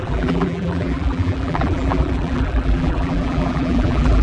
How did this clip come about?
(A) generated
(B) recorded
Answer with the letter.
A